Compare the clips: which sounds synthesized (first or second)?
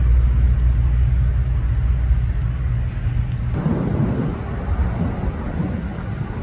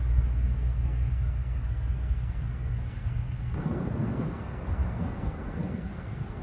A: second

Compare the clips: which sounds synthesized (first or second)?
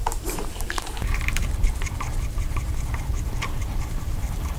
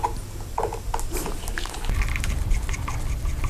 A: first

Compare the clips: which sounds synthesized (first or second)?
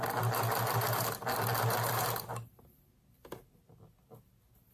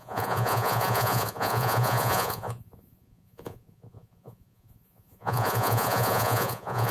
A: second